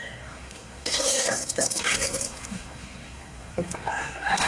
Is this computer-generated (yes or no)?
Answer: yes